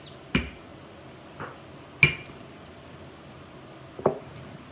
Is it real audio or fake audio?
real